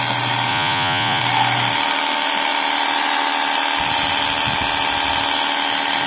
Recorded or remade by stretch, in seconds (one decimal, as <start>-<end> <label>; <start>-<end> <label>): 0.0-0.5 recorded; 0.5-1.2 remade; 1.2-6.1 recorded